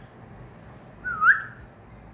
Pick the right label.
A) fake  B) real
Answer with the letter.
B